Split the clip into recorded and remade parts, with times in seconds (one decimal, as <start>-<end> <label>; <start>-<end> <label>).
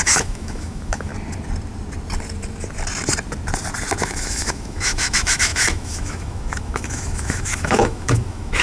0.0-1.1 remade; 1.1-4.0 recorded; 4.0-8.6 remade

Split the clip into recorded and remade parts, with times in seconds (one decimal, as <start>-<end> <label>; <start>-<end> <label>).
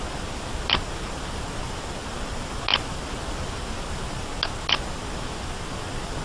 0.0-6.2 recorded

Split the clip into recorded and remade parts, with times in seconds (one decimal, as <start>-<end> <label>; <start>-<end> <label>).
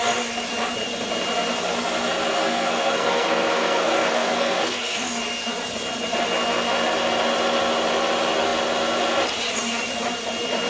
0.0-2.3 recorded; 2.3-5.1 remade; 5.1-10.7 recorded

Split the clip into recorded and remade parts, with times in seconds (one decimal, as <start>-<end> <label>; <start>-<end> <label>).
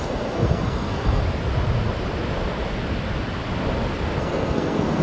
0.0-1.2 remade; 1.2-4.2 recorded; 4.2-5.0 remade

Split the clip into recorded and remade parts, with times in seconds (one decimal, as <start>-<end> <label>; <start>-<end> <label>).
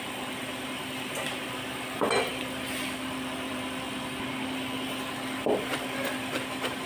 0.0-2.3 recorded; 2.3-3.9 remade; 3.9-6.9 recorded